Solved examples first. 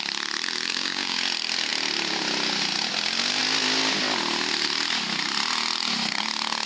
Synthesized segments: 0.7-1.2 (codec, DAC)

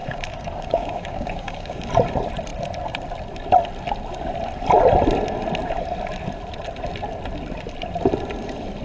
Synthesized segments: 0.0-1.9 (codec, DAC)